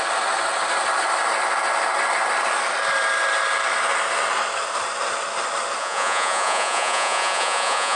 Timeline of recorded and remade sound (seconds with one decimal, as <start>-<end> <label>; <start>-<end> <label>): 0.0-5.8 recorded; 5.8-8.0 remade